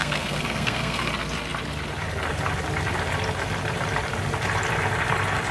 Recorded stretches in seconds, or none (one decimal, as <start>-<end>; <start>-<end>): 1.1-5.5